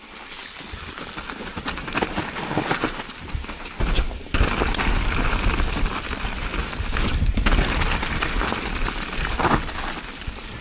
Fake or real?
real